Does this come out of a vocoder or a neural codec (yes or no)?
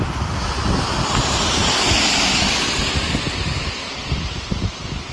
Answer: no